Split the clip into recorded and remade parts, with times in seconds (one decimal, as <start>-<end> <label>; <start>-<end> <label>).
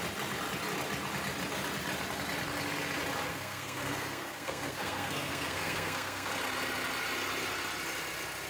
0.0-3.3 recorded; 3.3-6.3 remade; 6.3-8.5 recorded